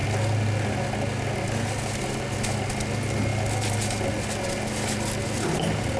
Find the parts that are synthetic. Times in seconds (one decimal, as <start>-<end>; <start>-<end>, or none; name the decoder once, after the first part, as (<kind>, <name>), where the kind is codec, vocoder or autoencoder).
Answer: none